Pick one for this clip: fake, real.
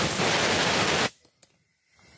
real